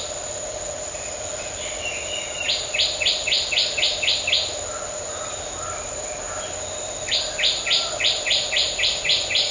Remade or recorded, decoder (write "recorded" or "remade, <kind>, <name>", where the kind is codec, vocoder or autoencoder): recorded